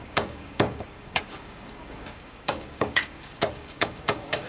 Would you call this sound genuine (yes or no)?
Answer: no